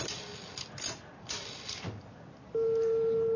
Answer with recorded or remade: recorded